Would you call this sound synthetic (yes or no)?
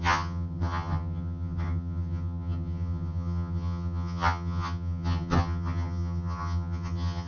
yes